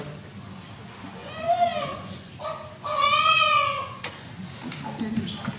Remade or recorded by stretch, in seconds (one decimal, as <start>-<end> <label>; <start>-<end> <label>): 0.0-1.2 recorded; 1.2-2.3 remade; 2.3-2.9 recorded; 2.9-4.3 remade; 4.3-5.6 recorded